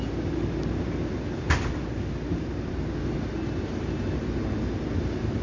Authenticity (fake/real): real